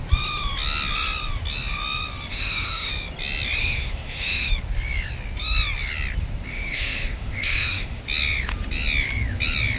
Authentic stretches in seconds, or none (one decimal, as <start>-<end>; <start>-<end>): 0.0-2.3; 2.9-3.6; 4.5-6.5; 8.0-9.8